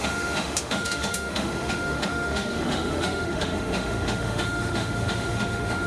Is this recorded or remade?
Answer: remade